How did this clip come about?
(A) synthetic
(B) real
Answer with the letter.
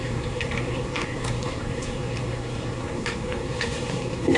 A